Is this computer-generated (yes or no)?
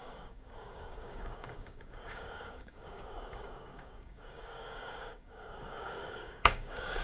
yes